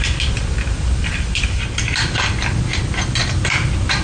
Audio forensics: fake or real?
fake